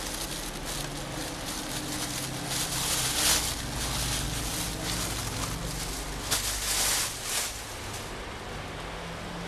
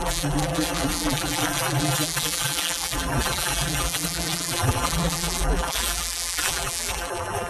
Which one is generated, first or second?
second